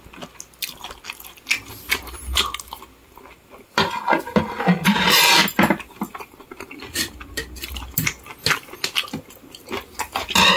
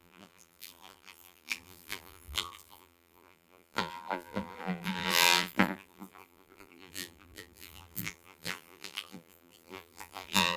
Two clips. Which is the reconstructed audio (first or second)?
second